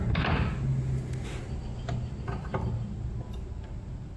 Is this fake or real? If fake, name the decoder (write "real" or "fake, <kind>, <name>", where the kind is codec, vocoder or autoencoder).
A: real